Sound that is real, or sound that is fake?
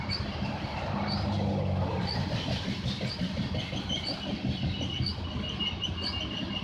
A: real